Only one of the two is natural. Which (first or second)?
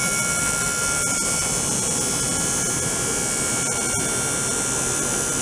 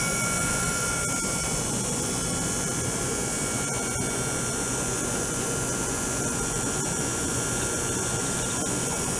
first